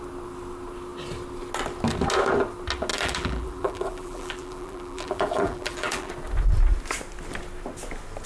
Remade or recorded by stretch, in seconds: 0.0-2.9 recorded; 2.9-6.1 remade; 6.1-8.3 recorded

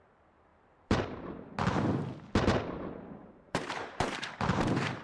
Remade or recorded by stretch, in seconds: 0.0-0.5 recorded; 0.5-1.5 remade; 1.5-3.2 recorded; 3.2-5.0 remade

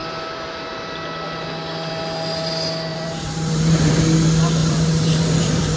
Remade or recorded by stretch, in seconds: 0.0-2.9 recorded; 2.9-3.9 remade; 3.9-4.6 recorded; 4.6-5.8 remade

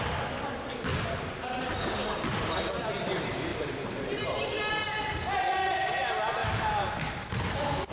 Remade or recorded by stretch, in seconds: 0.0-3.5 recorded; 3.5-4.4 remade; 4.4-6.4 recorded; 6.4-7.1 remade; 7.1-7.9 recorded

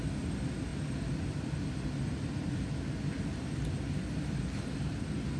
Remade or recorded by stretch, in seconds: 0.0-5.4 recorded

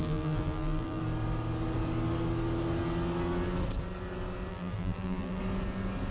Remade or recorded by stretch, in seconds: 0.0-1.0 remade; 1.0-4.5 recorded; 4.5-5.4 remade; 5.4-6.1 recorded

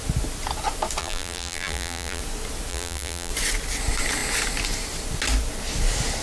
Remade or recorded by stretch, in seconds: 0.0-1.0 recorded; 1.0-2.2 remade; 2.2-2.7 recorded; 2.7-3.3 remade; 3.3-6.2 recorded

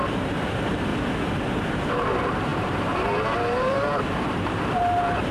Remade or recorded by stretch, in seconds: 0.0-0.9 remade; 0.9-1.5 recorded; 1.5-5.3 remade